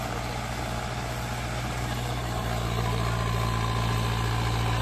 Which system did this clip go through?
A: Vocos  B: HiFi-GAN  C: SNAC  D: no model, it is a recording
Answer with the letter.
D